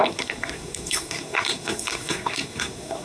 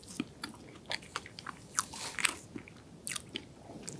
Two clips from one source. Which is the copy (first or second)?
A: first